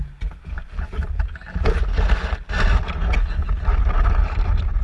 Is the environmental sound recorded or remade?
recorded